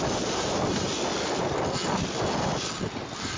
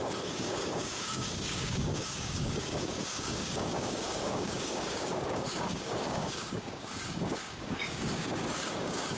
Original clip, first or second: first